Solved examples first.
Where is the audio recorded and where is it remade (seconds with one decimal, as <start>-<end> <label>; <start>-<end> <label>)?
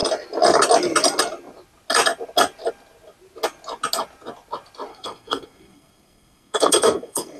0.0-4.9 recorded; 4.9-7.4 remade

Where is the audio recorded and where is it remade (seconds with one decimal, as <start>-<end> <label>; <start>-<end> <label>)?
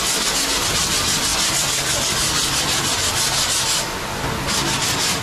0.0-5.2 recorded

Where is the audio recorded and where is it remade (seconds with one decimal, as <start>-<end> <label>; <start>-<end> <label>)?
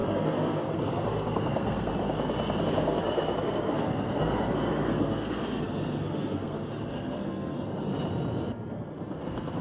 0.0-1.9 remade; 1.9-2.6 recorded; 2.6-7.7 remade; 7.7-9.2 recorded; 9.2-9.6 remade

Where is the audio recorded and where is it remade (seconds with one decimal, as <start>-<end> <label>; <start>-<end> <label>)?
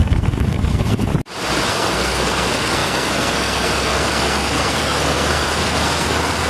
0.0-1.1 remade; 1.1-1.7 recorded; 1.7-6.5 remade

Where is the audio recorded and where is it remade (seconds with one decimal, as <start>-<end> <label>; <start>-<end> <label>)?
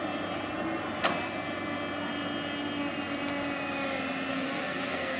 0.0-4.3 recorded; 4.3-5.2 remade